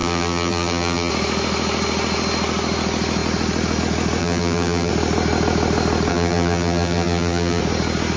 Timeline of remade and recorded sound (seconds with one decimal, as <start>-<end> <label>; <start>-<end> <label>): 0.0-1.1 remade; 1.1-4.2 recorded; 4.2-4.9 remade; 4.9-6.1 recorded; 6.1-7.6 remade; 7.6-8.2 recorded